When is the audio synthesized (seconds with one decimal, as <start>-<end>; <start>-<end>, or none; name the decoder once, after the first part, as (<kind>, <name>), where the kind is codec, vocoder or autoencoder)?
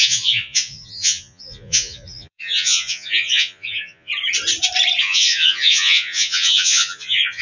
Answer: 0.0-4.1 (vocoder, Vocos); 5.0-7.4